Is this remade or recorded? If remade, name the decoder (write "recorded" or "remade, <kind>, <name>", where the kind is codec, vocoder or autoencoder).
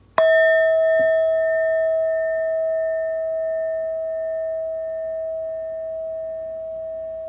recorded